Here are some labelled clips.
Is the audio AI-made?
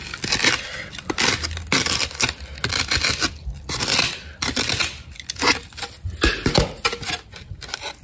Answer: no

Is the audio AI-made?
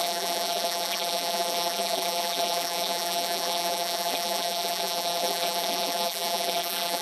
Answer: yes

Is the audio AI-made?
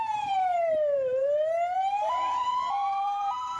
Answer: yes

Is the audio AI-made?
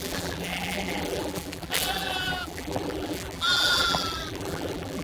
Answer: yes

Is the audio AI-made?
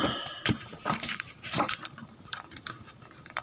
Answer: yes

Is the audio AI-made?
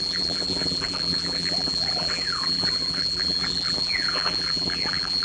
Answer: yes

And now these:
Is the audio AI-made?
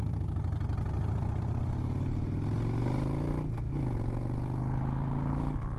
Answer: no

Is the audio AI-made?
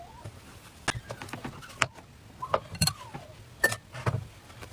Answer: no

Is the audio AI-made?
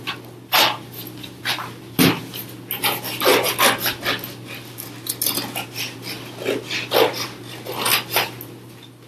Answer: no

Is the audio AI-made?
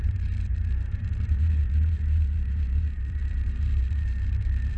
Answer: yes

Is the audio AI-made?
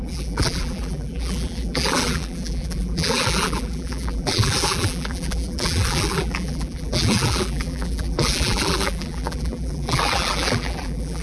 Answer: yes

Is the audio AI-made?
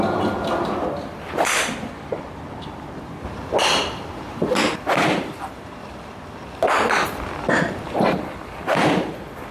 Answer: yes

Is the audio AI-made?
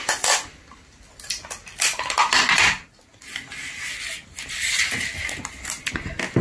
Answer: no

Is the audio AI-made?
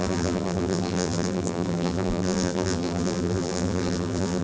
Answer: yes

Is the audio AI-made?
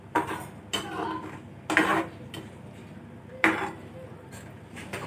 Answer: yes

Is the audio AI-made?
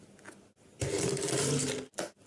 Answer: no